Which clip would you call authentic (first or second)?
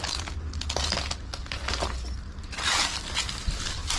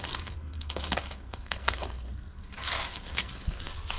first